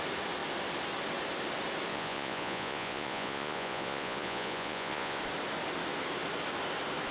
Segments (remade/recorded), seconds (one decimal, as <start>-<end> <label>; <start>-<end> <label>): 0.0-1.9 recorded; 1.9-5.2 remade; 5.2-7.1 recorded